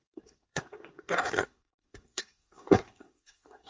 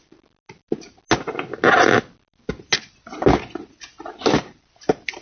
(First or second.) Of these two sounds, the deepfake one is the first